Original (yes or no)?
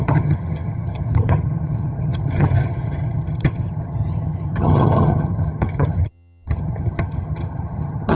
no